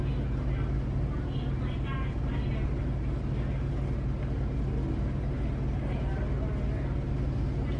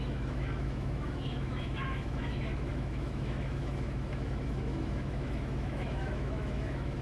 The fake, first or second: second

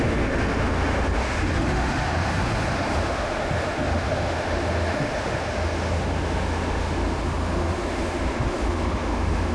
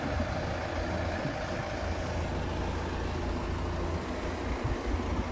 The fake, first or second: first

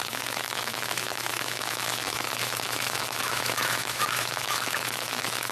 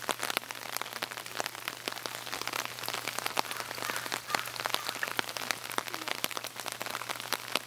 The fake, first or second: first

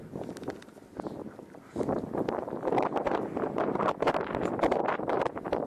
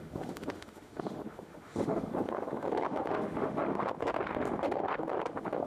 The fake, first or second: second